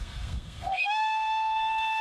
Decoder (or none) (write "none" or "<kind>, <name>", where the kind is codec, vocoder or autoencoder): codec, SNAC